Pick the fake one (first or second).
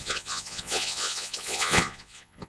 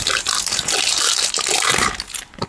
first